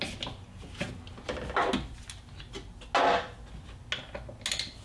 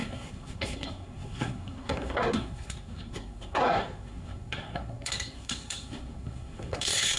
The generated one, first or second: second